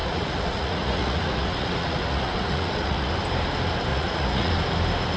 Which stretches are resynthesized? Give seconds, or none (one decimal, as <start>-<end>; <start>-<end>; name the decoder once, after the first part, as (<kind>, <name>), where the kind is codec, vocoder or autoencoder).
0.0-3.1 (vocoder, Vocos); 3.9-4.5